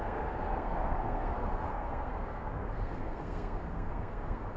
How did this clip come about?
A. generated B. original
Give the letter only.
A